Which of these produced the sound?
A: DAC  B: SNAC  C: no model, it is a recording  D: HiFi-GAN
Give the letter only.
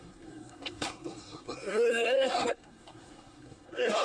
B